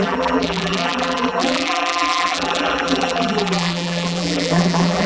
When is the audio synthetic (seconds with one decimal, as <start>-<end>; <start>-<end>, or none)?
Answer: 0.0-5.1